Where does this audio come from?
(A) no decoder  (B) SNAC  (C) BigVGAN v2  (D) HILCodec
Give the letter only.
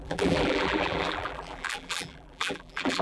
C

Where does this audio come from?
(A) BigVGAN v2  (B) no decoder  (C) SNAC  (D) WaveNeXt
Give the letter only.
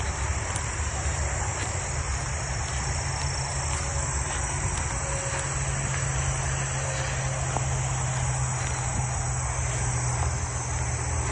B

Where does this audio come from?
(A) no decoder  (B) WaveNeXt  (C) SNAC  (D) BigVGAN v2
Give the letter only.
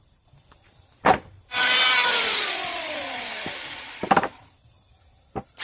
D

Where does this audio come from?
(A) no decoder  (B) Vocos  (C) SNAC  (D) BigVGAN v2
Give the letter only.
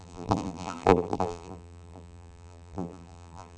D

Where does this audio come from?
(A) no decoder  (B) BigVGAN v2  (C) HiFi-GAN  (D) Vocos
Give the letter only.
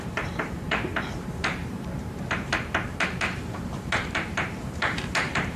B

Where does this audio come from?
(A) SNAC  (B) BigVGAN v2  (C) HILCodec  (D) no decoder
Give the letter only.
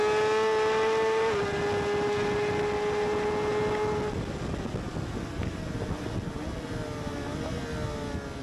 D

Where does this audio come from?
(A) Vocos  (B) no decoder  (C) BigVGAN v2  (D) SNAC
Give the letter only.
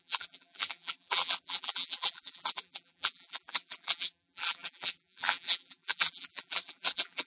C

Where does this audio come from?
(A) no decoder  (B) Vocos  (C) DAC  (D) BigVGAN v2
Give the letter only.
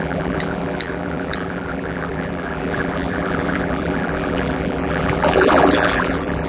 D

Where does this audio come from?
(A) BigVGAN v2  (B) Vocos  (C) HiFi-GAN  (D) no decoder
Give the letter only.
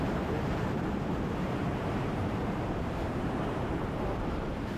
A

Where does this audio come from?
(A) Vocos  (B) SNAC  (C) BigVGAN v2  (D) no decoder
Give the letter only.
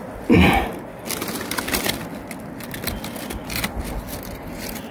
D